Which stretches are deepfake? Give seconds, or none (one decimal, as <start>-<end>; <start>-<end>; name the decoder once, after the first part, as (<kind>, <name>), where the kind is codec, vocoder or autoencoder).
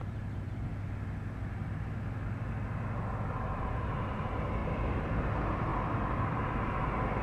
0.0-0.7 (vocoder, BigVGAN v2); 3.3-5.7; 6.4-7.2